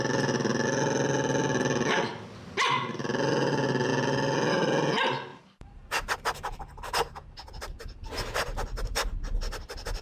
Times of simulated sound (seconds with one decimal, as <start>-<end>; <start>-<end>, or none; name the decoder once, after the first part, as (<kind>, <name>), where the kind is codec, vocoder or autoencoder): 5.3-6.6 (vocoder, BigVGAN v2)